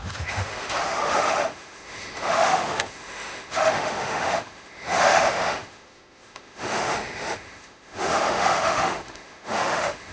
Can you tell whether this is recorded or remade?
remade